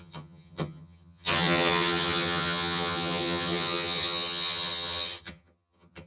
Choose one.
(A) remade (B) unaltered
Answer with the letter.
A